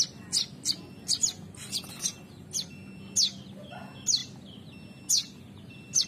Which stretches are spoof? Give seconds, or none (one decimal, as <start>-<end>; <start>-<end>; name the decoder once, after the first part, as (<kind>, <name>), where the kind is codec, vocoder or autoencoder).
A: none